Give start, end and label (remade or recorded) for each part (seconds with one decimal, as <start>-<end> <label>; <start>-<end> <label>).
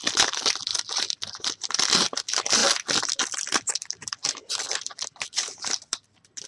0.0-0.7 recorded; 0.7-1.8 remade; 1.8-2.6 recorded; 2.6-6.5 remade